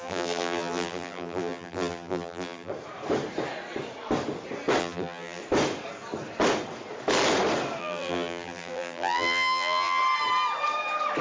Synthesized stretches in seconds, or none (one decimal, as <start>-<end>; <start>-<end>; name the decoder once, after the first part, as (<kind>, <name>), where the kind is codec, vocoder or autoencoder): 0.0-2.7 (vocoder, BigVGAN v2); 4.8-5.4; 7.8-10.0